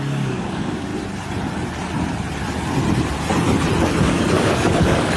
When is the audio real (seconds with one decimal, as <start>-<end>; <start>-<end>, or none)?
0.9-4.0